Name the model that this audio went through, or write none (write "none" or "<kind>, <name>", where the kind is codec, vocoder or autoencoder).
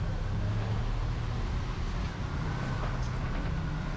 none